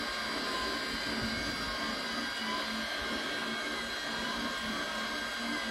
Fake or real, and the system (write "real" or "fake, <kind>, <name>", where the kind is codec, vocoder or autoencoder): real